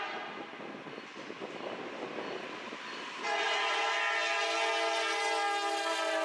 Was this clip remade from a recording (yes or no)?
no